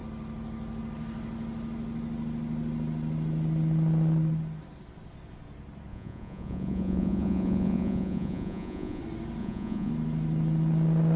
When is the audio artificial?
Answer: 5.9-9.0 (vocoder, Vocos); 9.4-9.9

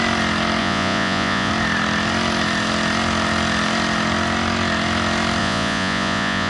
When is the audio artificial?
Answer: 0.6-1.5 (vocoder, Vocos); 5.4-6.5

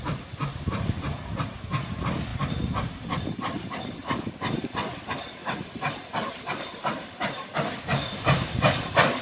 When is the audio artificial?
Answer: 5.4-6.1 (vocoder, Vocos)

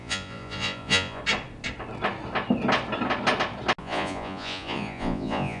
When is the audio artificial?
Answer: 0.0-1.2 (vocoder, Vocos); 3.8-5.6

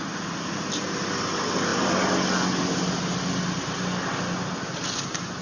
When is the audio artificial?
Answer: none